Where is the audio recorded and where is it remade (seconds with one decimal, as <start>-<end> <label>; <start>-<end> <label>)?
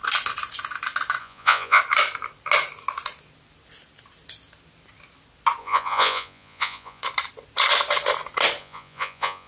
0.0-1.2 recorded; 1.2-1.8 remade; 1.8-5.6 recorded; 5.6-7.0 remade; 7.0-8.6 recorded; 8.6-9.5 remade